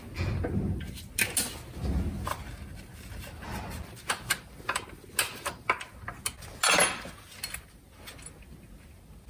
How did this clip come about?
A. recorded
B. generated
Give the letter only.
A